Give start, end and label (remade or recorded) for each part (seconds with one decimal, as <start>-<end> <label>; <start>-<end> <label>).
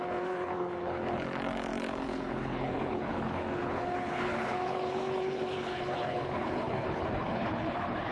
0.0-8.1 remade